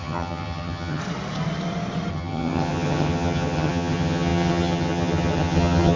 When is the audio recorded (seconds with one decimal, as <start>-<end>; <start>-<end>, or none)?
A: 1.0-2.1